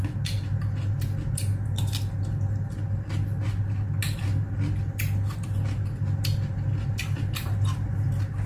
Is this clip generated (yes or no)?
no